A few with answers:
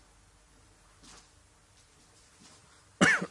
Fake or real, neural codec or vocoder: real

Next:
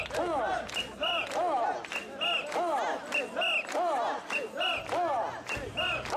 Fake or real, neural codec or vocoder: real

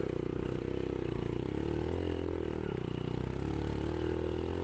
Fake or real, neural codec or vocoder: real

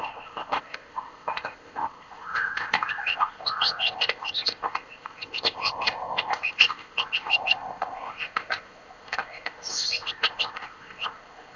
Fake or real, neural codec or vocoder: fake, codec, ZipCodec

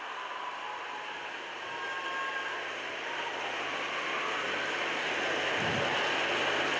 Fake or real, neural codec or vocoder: real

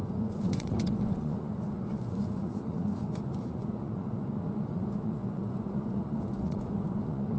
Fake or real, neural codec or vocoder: fake, vocoder, Vocos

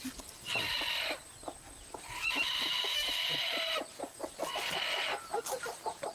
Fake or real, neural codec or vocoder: real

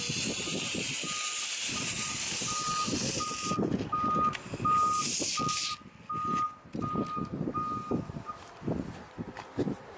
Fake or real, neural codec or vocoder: real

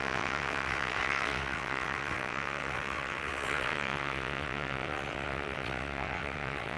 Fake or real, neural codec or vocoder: fake, vocoder, WaveNeXt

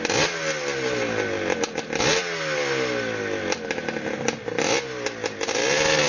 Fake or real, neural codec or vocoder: real